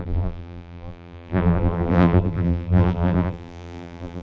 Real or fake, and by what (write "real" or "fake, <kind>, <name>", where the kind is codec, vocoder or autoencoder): fake, vocoder, BigVGAN v2